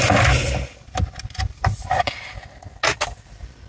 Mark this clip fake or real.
real